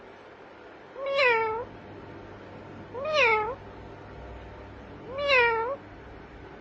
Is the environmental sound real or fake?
real